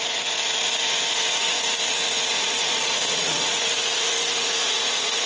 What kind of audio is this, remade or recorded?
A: remade